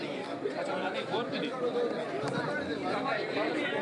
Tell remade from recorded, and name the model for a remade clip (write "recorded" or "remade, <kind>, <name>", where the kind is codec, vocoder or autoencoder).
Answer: recorded